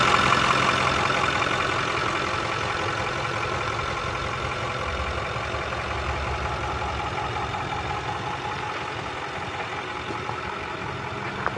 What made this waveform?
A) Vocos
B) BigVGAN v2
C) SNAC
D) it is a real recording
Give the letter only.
D